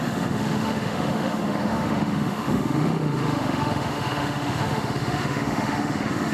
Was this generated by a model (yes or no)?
yes